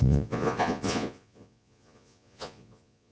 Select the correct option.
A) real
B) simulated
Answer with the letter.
B